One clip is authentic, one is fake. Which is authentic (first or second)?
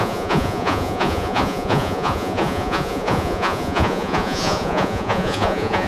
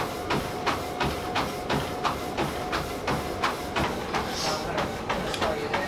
second